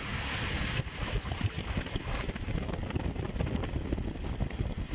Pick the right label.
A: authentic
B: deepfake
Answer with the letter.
A